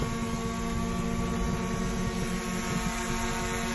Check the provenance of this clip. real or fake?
real